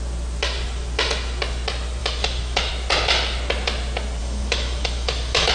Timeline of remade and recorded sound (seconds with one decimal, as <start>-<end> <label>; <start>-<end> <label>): 0.0-2.0 recorded; 2.0-2.7 remade; 2.7-4.2 recorded; 4.2-5.5 remade